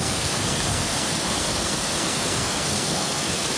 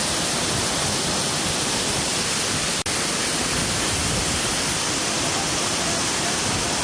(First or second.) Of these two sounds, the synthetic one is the first